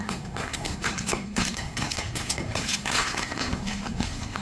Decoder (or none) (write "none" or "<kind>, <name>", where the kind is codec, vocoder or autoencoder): codec, SNAC